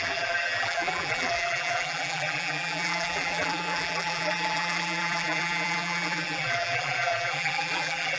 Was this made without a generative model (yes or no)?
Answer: no